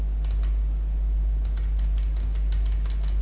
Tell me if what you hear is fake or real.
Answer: real